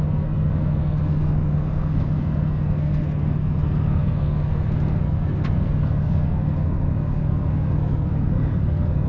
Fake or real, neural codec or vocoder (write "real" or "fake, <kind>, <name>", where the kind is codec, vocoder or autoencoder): fake, codec, SNAC